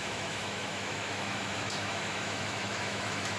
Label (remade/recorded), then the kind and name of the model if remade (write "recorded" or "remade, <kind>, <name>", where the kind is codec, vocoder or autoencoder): remade, autoencoder, DAC-VAE